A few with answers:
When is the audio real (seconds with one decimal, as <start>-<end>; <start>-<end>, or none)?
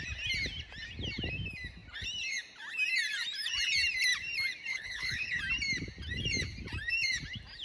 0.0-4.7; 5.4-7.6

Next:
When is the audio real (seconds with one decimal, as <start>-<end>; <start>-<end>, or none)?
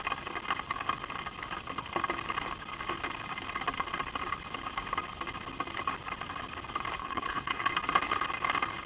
0.0-7.0; 7.7-8.9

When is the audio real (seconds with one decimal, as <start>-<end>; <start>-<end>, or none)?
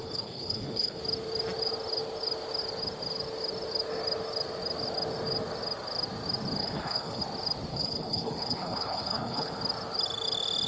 1.0-6.6; 7.2-7.7; 9.6-10.7